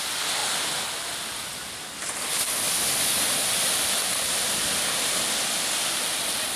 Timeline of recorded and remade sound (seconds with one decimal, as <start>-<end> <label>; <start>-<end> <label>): 0.0-6.6 recorded